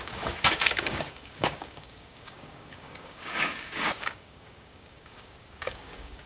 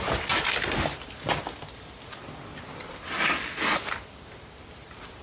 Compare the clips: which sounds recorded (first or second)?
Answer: second